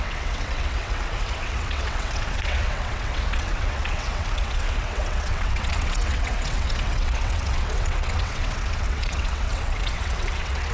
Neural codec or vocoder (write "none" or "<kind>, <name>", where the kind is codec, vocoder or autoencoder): vocoder, WaveNeXt